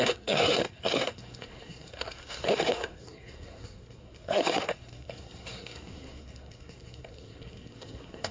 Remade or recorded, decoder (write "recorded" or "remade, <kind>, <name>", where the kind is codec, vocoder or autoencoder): remade, codec, SNAC